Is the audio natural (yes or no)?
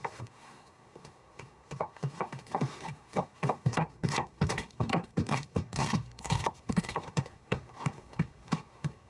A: no